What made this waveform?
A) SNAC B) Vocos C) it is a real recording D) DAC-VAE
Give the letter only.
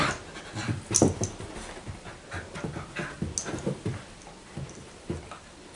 C